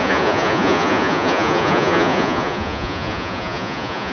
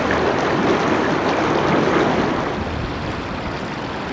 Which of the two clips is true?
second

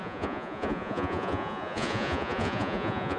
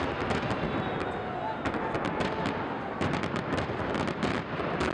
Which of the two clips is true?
second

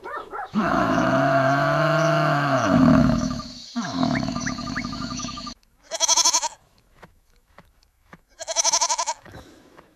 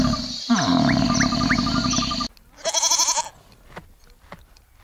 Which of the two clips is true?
second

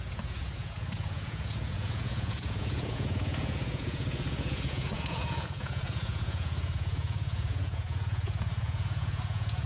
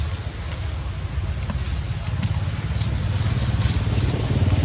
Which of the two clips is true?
second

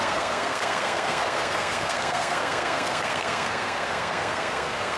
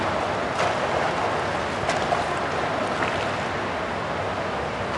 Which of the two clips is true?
second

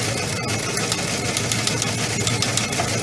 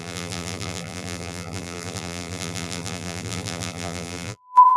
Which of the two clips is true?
first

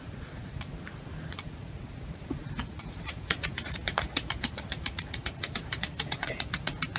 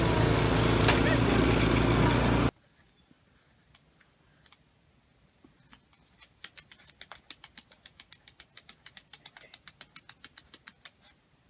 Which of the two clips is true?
second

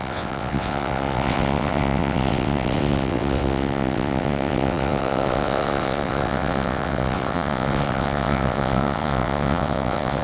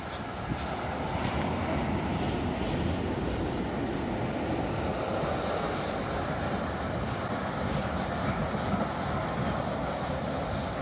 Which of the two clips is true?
second